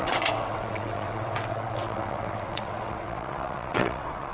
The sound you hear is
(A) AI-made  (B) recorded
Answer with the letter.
A